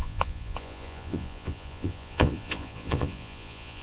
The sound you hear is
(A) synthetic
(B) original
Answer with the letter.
A